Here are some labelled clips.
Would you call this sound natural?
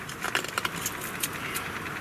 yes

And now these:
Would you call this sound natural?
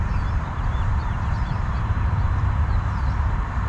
no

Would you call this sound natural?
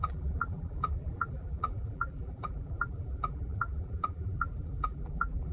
no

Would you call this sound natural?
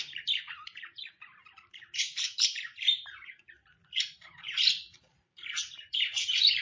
no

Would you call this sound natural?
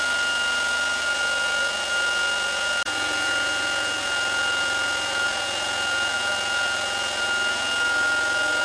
yes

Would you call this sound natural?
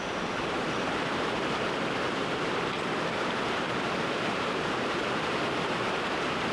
no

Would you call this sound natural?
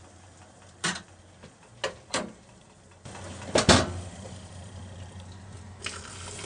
yes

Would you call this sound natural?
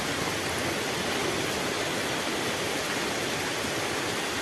yes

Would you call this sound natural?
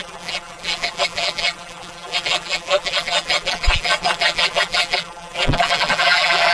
no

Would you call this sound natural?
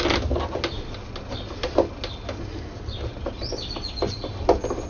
yes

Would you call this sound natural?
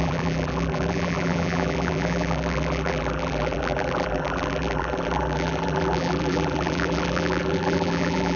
no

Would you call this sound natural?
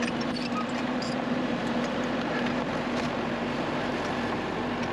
no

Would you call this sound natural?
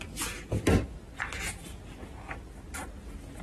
yes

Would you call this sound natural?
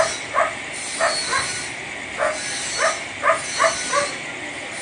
yes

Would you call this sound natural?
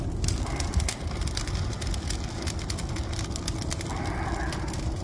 yes